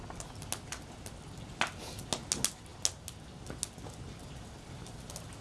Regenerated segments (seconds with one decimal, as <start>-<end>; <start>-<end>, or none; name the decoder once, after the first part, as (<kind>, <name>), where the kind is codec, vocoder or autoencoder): none